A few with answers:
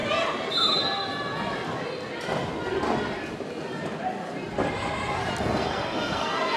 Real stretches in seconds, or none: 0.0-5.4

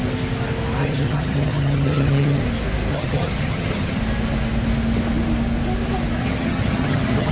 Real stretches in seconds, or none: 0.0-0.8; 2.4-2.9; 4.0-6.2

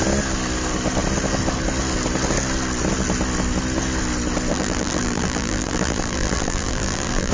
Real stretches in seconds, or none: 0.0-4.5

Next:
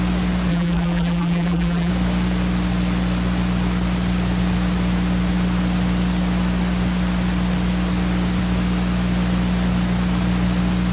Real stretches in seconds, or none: 0.0-0.5; 1.9-10.9

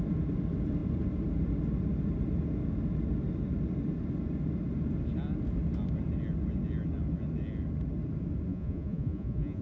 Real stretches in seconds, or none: 0.0-8.5